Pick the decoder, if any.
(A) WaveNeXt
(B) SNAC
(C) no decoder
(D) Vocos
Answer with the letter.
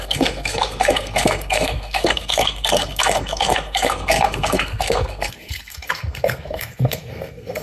B